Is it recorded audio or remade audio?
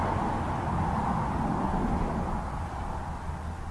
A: recorded